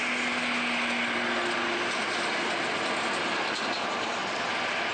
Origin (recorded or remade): recorded